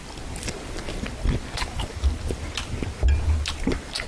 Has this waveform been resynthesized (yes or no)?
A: no